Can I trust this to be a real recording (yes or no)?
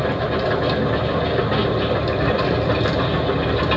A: no